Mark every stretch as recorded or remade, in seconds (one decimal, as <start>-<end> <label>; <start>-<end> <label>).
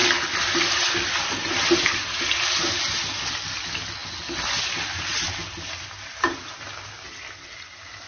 0.0-8.1 recorded